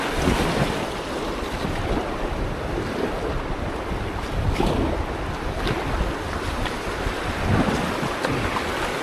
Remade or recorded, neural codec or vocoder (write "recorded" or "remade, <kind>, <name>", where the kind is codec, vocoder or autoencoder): recorded